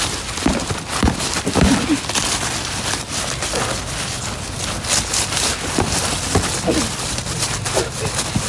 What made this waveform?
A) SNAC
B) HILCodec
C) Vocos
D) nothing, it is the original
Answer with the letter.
D